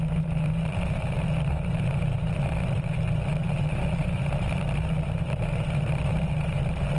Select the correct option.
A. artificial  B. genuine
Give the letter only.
A